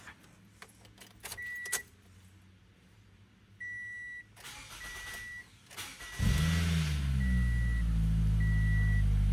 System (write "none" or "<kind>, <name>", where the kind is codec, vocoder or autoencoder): none